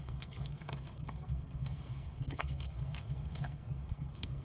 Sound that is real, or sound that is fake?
fake